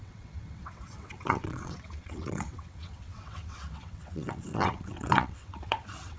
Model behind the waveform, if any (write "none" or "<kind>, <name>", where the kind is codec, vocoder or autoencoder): vocoder, WaveNeXt